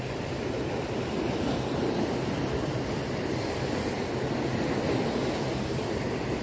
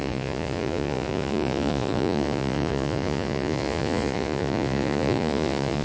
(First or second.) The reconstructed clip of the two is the second